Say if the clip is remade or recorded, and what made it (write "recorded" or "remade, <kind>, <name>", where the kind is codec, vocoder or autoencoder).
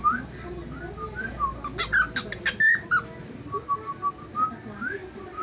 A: recorded